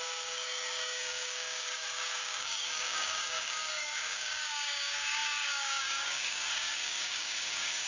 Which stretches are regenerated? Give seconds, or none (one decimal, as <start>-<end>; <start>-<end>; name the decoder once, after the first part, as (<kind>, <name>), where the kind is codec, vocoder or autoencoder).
0.0-7.9 (codec, DAC)